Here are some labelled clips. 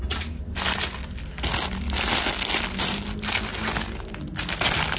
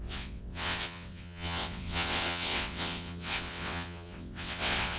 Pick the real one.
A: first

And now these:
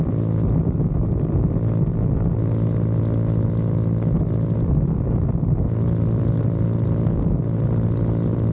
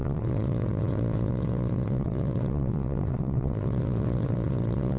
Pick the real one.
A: first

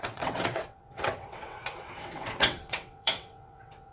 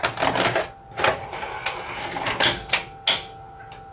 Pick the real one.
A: second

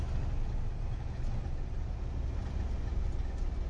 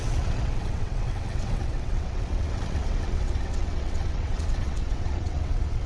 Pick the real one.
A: first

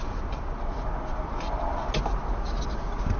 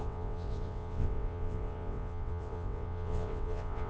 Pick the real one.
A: first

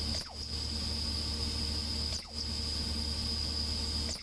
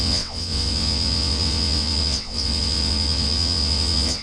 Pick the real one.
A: first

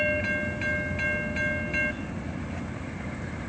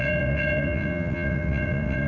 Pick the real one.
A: first